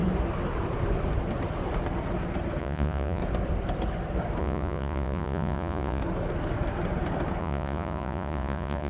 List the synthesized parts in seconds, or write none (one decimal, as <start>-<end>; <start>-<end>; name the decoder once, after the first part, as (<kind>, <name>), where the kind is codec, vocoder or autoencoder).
2.6-3.2 (vocoder, Vocos); 4.4-6.0; 7.4-8.9